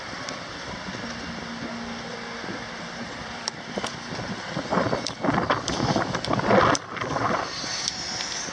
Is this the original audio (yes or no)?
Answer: no